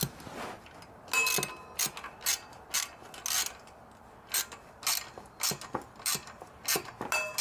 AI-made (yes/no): no